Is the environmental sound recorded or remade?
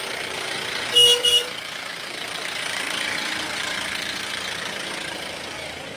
remade